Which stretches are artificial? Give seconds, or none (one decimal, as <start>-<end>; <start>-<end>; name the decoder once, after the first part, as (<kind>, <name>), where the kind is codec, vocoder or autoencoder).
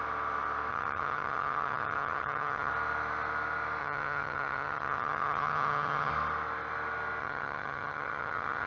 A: 0.7-2.7 (vocoder, HiFi-GAN); 3.8-6.1; 7.2-8.7